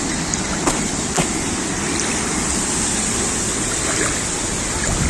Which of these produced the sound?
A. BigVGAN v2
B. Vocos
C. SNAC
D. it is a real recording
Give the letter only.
D